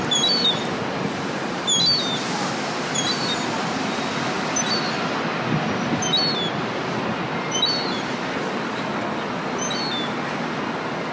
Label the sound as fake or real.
real